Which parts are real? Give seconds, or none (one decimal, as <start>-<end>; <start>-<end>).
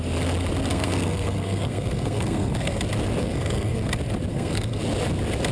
0.0-0.7; 2.8-3.2; 3.9-4.3; 4.8-5.5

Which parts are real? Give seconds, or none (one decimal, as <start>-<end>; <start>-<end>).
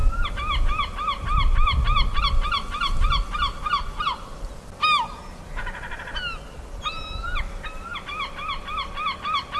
0.0-9.6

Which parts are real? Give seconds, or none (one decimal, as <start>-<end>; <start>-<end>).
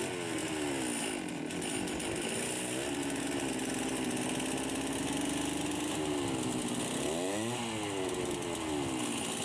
0.0-9.4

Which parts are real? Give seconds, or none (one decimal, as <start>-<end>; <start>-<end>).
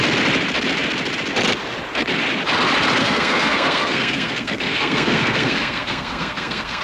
0.0-3.0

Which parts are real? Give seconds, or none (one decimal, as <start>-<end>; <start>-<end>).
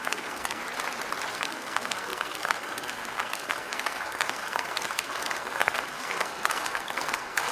0.6-1.3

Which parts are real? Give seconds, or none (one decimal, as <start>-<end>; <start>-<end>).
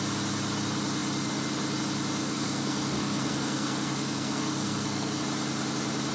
0.0-2.2; 5.2-6.1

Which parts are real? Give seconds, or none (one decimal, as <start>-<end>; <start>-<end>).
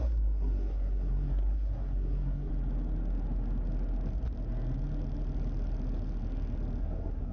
2.5-6.8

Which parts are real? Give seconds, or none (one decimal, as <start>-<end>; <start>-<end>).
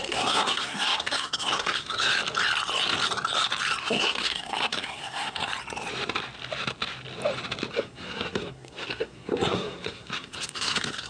2.1-3.8; 5.5-7.7